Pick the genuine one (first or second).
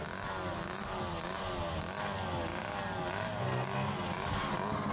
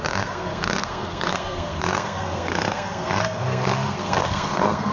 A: first